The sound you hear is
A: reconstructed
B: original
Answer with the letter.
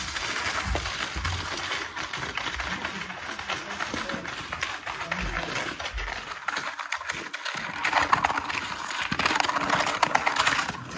B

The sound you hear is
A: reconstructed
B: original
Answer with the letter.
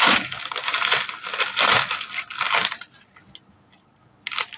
B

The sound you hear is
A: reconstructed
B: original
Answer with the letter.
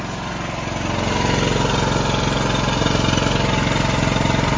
B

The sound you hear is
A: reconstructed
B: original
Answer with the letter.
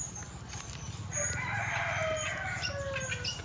B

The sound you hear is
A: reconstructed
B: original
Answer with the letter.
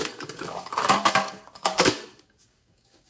A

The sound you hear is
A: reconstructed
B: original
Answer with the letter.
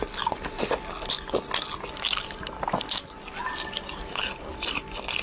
B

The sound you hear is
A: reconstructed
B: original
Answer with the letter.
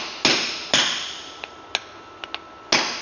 B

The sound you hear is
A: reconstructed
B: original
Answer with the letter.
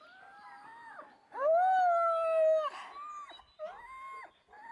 B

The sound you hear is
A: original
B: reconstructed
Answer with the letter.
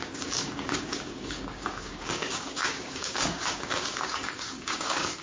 B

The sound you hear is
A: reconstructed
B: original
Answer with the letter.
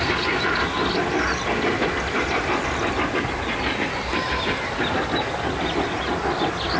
B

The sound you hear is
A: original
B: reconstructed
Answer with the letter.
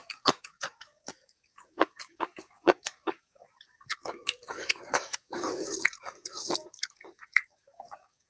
B